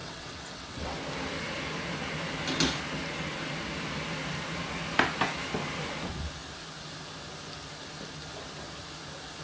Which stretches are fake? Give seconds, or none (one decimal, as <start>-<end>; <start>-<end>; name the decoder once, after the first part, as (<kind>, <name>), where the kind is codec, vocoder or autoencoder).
0.0-0.9 (vocoder, WaveNeXt)